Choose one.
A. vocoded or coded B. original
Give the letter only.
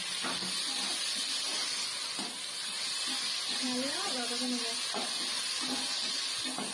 B